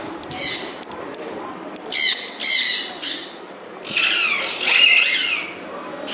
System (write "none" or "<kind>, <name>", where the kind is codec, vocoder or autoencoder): none